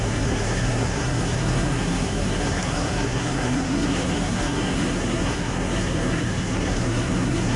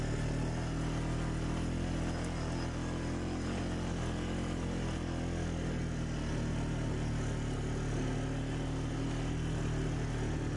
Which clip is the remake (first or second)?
first